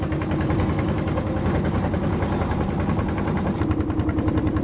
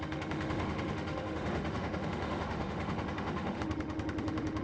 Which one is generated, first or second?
second